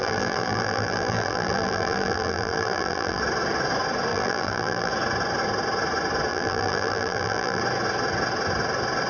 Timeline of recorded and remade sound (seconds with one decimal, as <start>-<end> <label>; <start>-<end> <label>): 0.0-3.2 remade; 3.2-4.1 recorded; 4.1-4.9 remade; 4.9-6.3 recorded; 6.3-7.6 remade; 7.6-9.1 recorded